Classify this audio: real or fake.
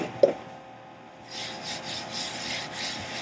real